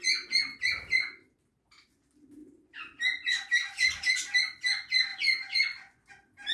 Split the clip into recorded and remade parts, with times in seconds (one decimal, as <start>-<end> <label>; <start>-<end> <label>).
0.0-5.1 recorded; 5.1-6.1 remade; 6.1-6.5 recorded